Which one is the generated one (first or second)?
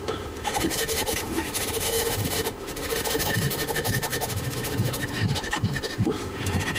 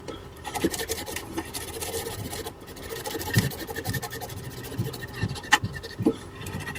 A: first